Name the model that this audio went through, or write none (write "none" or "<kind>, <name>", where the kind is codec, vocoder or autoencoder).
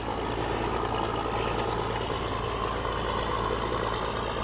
none